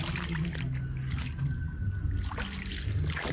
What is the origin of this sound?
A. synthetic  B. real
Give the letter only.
B